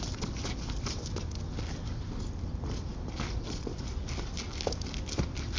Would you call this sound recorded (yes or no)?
yes